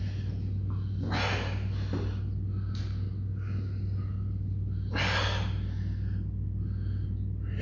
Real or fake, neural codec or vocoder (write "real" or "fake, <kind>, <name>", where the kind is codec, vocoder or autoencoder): real